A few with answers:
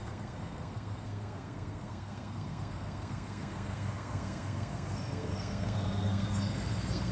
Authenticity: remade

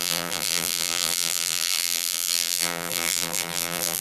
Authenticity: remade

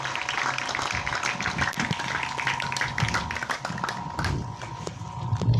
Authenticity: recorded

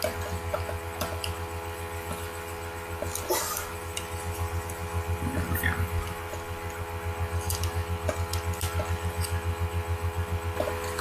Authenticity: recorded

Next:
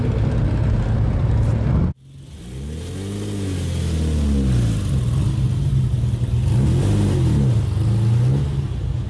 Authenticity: recorded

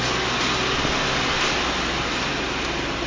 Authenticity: recorded